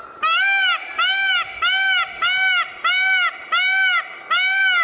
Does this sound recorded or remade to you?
recorded